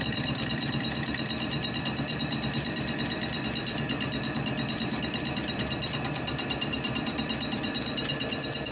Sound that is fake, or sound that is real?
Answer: fake